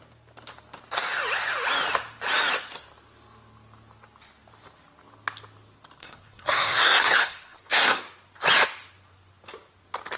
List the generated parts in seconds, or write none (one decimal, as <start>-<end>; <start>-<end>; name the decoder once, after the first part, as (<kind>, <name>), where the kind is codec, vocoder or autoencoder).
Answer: 6.0-8.0 (codec, SNAC)